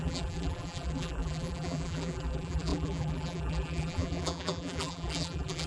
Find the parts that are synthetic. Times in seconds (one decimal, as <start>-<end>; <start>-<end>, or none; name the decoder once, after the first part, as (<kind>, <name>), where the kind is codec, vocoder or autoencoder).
0.0-5.7 (vocoder, BigVGAN v2)